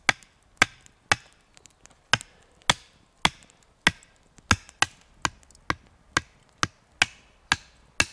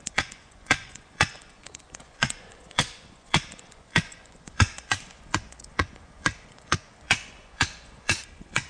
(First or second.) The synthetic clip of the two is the second